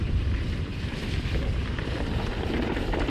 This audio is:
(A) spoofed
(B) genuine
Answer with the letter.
A